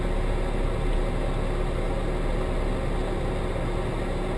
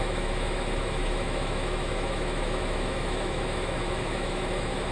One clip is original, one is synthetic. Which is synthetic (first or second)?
second